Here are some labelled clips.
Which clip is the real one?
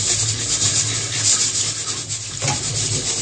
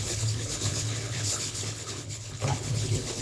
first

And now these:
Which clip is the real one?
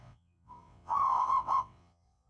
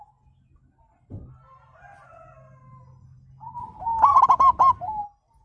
second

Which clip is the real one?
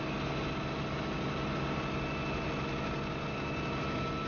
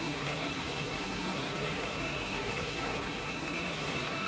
first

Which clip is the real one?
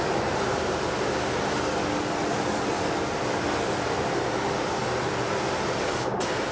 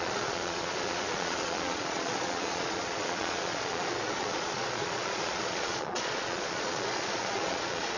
first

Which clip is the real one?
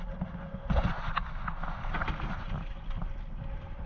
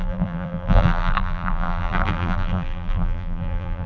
first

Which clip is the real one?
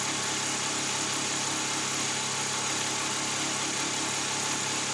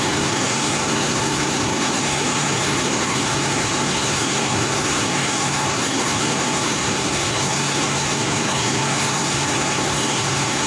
first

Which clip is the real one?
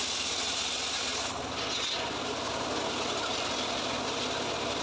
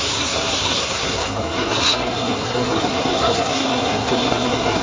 first